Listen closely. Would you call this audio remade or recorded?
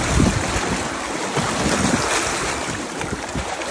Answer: recorded